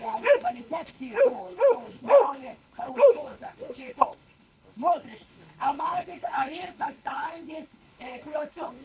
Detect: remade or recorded remade